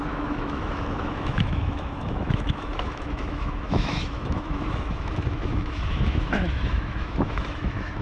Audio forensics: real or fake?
fake